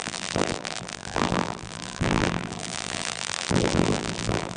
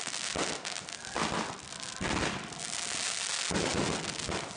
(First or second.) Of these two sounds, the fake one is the first